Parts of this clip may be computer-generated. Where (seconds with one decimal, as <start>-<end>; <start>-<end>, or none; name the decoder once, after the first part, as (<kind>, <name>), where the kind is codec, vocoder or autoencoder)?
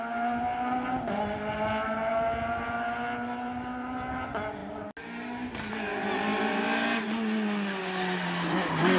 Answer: none